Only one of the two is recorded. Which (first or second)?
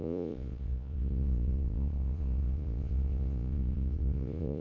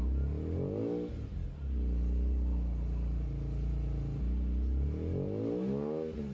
second